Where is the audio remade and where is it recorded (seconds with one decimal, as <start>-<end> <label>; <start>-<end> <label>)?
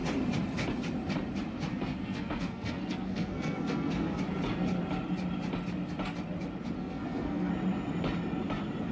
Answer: 0.0-1.7 recorded; 1.7-4.2 remade; 4.2-6.8 recorded; 6.8-7.5 remade; 7.5-8.9 recorded